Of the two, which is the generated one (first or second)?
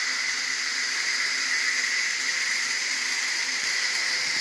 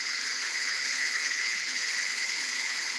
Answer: second